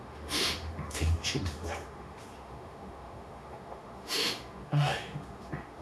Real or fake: fake